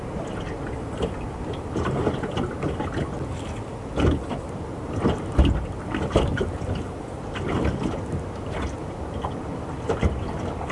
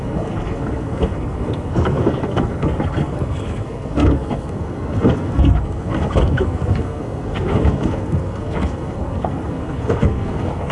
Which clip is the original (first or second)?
first